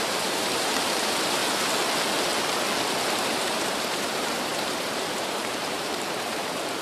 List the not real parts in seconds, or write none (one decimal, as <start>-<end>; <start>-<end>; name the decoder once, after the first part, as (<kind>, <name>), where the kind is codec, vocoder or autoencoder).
0.0-1.4 (vocoder, BigVGAN v2); 3.0-6.8